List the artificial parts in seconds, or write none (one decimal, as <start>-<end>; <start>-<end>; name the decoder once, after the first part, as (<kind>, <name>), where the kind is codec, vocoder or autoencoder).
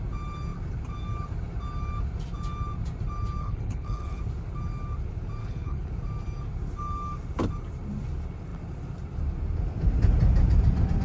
3.4-4.2 (codec, HILCodec); 5.4-5.9